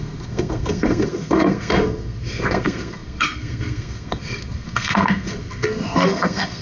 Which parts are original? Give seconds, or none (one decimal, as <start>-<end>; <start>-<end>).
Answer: none